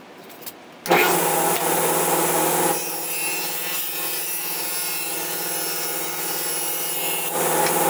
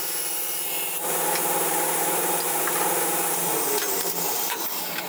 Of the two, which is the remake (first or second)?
second